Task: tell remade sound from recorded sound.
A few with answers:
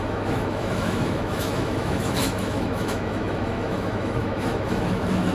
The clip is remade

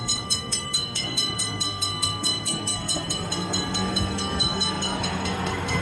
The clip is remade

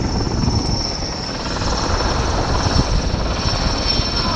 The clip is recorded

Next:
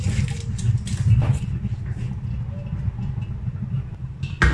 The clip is recorded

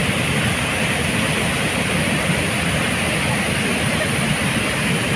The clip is recorded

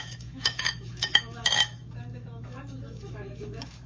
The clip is remade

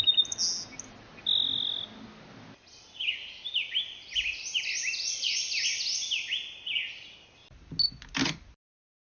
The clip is recorded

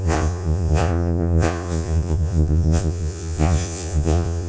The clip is remade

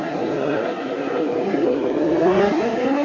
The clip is remade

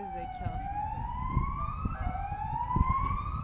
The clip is recorded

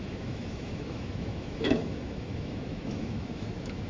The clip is remade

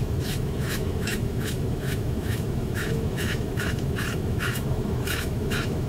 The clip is remade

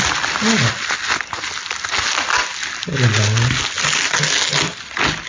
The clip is recorded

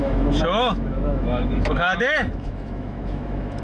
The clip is remade